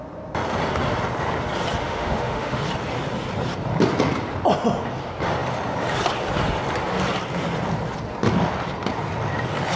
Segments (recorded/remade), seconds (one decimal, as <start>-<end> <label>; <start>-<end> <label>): 0.0-1.8 recorded; 1.8-2.6 remade; 2.6-9.8 recorded